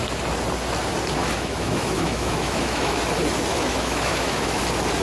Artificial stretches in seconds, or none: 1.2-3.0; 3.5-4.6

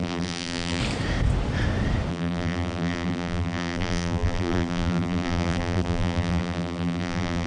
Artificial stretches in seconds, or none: 0.0-0.8; 2.1-7.5